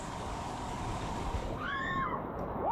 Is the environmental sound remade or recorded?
remade